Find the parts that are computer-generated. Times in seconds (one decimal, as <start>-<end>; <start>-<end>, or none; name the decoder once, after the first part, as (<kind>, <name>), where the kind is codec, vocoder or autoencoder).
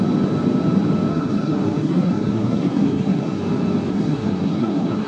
1.1-3.4 (codec, SNAC); 3.9-5.1